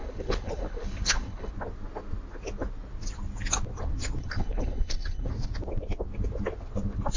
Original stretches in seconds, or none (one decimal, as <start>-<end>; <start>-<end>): 1.5-4.2; 5.3-7.2